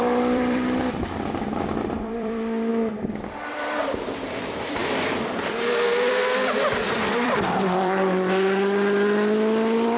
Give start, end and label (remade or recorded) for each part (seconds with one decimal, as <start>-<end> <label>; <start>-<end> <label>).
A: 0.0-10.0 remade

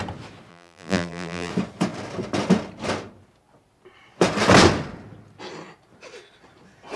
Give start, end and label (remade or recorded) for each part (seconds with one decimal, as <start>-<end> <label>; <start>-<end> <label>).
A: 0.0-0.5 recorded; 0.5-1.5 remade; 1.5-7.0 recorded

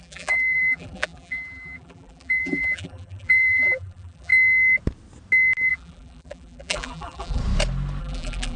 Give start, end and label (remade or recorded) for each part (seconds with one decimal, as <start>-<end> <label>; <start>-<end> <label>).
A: 0.0-4.3 remade; 4.3-5.7 recorded; 5.7-7.4 remade; 7.4-8.0 recorded; 8.0-8.6 remade

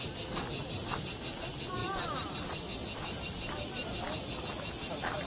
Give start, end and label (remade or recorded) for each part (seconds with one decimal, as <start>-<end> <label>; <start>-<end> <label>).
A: 0.0-5.3 recorded

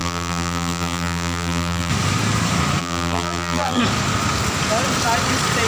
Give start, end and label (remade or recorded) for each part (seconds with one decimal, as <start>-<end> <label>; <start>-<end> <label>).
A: 0.0-1.9 remade; 1.9-2.8 recorded; 2.8-3.8 remade; 3.8-5.7 recorded

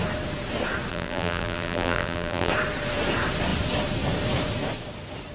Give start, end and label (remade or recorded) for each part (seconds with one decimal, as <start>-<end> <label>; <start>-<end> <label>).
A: 0.0-0.9 recorded; 0.9-2.5 remade; 2.5-5.3 recorded

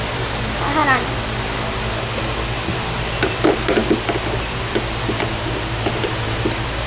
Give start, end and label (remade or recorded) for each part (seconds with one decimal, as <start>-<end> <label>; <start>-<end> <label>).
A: 0.0-6.9 recorded

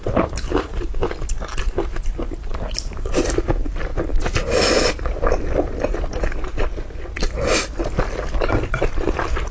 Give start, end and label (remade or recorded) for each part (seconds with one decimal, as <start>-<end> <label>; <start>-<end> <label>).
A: 0.0-1.0 remade; 1.0-1.6 recorded; 1.6-3.9 remade; 3.9-8.5 recorded; 8.5-9.5 remade